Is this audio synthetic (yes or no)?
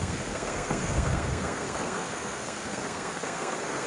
yes